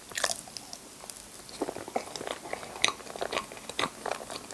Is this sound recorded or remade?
recorded